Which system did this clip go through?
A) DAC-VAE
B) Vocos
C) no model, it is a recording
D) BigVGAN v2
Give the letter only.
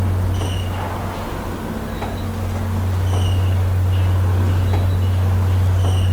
C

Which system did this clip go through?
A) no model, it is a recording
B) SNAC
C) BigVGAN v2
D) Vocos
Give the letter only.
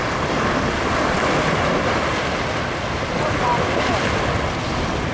A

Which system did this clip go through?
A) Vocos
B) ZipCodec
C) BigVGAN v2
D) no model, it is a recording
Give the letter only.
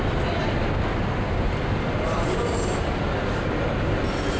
D